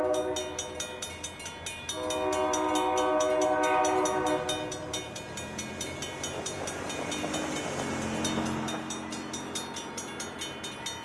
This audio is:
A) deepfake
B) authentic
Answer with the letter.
B